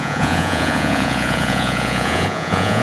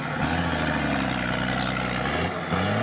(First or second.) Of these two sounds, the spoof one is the first